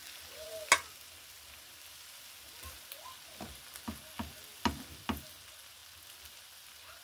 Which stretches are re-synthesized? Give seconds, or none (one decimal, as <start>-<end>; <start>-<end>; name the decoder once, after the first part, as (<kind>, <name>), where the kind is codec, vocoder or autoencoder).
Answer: none